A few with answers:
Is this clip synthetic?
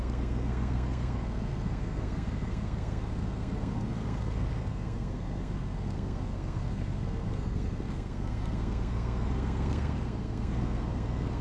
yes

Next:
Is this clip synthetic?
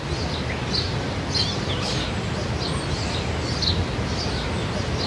no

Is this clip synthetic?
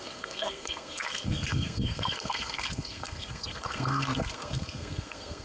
yes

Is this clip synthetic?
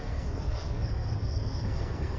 yes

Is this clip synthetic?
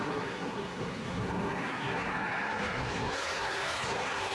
yes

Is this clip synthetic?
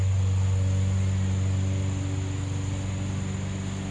no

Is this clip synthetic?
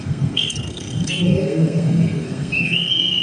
yes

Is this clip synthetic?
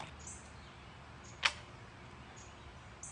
no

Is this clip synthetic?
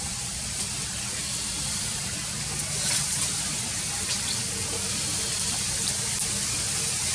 no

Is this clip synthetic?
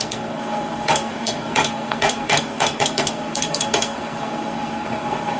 yes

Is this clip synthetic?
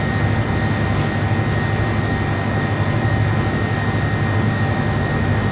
no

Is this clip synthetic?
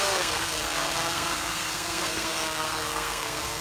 yes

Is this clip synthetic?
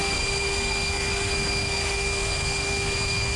yes